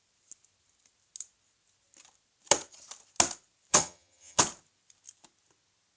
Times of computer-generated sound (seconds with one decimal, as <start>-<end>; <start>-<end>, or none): 3.7-4.4